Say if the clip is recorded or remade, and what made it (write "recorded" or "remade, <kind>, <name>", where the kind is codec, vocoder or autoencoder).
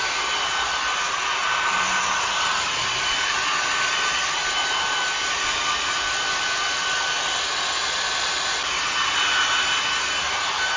recorded